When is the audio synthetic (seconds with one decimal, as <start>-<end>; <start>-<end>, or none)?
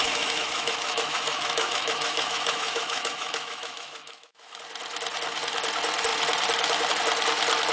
0.0-4.6